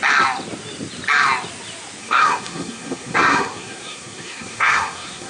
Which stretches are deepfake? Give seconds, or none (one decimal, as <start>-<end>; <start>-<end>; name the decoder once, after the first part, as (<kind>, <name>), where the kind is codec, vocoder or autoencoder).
2.0-5.3 (codec, SNAC)